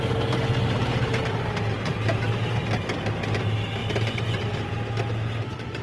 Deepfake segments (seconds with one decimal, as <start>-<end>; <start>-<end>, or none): none